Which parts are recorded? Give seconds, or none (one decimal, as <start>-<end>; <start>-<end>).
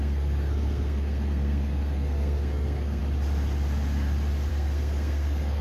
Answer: 3.0-4.5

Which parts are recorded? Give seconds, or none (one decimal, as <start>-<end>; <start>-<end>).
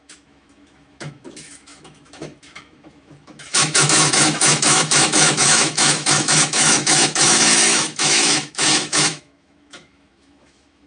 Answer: none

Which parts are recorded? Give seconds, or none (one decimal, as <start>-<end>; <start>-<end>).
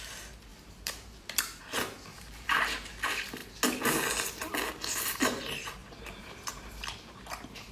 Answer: 0.0-0.5; 1.6-2.1; 2.9-5.8; 6.8-7.7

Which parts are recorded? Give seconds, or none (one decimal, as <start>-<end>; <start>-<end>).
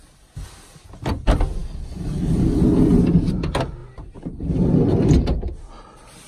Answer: 0.0-6.3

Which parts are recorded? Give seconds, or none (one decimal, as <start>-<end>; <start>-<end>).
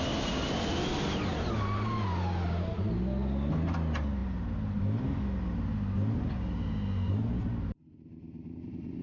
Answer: 0.0-9.0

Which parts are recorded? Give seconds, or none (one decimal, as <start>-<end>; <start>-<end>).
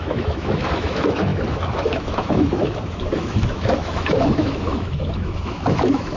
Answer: none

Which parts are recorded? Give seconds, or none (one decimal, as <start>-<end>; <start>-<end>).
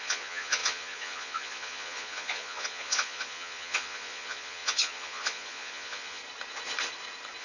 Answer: 6.2-7.4